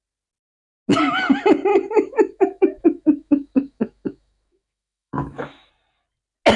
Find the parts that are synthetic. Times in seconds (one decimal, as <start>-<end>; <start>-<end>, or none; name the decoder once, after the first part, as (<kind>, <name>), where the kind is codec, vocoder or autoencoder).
1.7-5.7 (autoencoder, DAC-VAE)